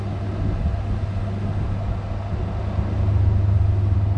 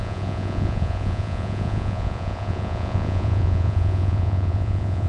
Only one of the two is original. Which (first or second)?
first